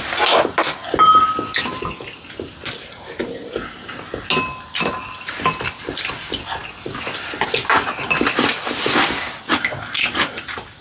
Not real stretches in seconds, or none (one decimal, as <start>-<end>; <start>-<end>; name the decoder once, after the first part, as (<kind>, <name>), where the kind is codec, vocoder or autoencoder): none